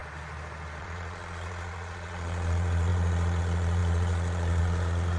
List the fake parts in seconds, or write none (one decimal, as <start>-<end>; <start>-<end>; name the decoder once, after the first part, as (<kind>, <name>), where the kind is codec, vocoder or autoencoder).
0.8-5.2 (vocoder, Vocos)